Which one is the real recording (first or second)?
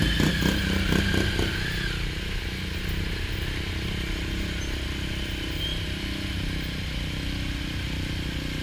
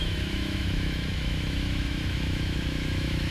first